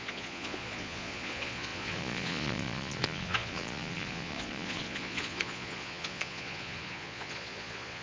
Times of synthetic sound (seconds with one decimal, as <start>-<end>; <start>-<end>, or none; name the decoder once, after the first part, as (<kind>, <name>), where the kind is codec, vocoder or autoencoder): 0.0-8.0 (vocoder, Vocos)